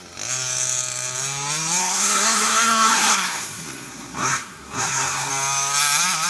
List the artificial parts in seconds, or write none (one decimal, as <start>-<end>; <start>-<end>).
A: 1.8-5.3